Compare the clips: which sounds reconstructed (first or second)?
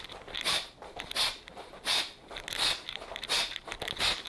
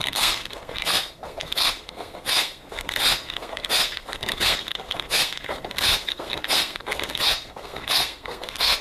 second